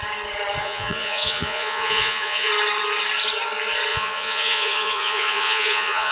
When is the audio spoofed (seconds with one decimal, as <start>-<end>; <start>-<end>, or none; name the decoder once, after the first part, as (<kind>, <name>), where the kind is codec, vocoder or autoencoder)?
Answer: 0.6-2.5 (vocoder, Vocos); 3.9-6.1